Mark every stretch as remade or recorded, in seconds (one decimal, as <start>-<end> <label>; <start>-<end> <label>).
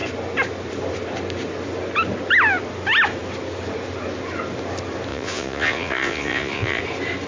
0.0-5.1 recorded; 5.1-6.8 remade; 6.8-7.3 recorded